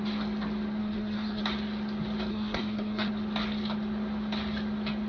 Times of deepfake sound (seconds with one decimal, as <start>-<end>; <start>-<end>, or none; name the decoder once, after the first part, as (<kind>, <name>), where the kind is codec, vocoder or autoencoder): 0.8-1.4 (codec, SNAC); 2.3-3.1